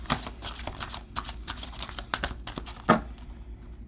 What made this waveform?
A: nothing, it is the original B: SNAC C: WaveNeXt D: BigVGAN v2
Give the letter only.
A